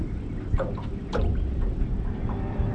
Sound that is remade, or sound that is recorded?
recorded